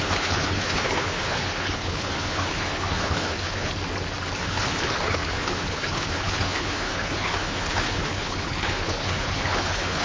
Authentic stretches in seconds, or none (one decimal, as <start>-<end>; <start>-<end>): 3.7-4.4